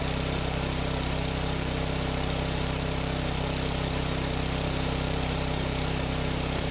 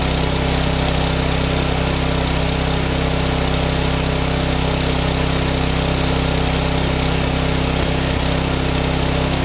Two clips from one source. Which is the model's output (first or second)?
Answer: first